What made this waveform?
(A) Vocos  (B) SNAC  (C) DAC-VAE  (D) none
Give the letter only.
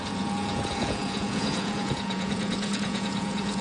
A